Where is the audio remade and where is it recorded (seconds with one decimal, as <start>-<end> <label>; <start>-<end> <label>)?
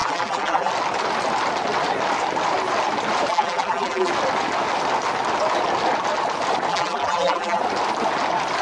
0.0-0.7 remade; 0.7-3.3 recorded; 3.3-4.1 remade; 4.1-6.7 recorded; 6.7-7.6 remade; 7.6-8.6 recorded